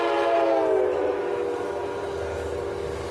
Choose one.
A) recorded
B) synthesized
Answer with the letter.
A